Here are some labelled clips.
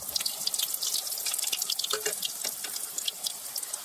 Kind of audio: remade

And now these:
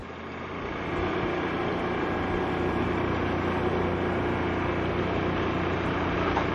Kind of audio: recorded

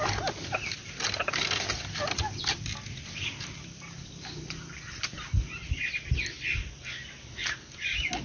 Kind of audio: recorded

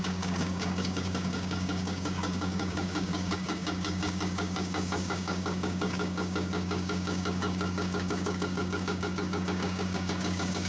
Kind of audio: remade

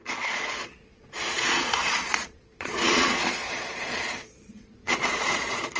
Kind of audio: remade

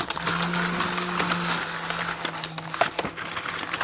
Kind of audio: recorded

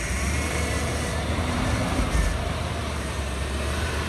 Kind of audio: remade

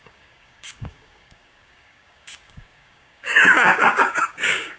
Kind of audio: remade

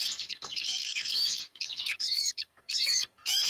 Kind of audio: remade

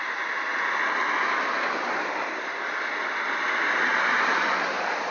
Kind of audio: remade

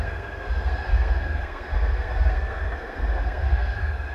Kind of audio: remade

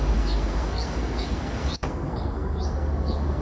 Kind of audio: remade